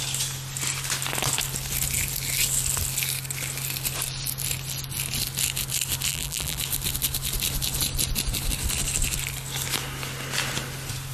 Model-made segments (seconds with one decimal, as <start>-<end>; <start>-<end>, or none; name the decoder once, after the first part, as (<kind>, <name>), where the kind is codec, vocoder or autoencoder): 6.1-6.6 (vocoder, BigVGAN v2)